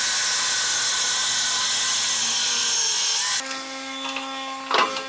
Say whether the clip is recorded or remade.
recorded